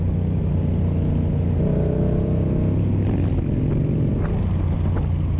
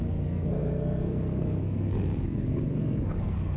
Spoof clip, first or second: second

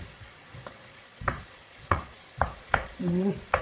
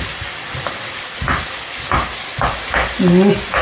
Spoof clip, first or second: first